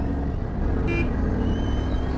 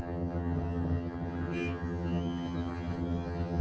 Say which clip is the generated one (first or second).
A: second